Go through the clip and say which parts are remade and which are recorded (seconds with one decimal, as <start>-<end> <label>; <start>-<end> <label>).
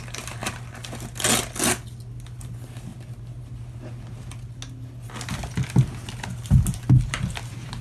0.0-7.8 recorded